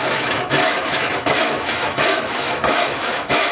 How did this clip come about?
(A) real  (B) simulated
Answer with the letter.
B